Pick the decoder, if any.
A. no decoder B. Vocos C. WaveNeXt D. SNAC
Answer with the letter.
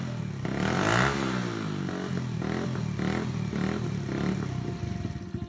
A